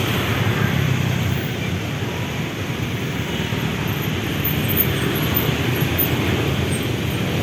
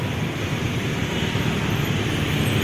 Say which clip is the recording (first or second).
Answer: second